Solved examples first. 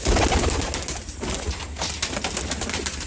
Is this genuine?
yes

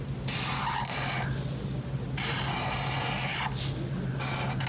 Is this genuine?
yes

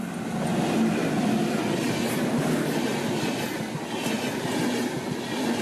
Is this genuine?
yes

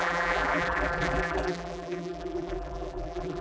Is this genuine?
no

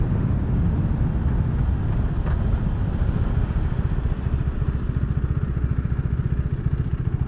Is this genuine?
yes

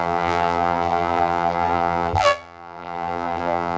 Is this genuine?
no